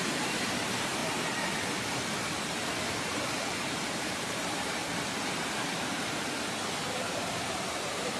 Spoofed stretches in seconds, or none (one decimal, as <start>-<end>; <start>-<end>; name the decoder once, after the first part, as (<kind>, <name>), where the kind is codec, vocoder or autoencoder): 0.0-1.0 (vocoder, BigVGAN v2); 2.3-4.8; 7.1-8.2